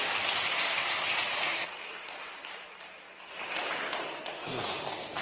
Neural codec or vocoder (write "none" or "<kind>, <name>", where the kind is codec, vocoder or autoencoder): none